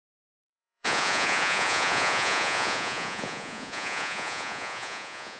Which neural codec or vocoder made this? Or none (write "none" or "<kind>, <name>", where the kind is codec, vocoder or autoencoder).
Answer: vocoder, Vocos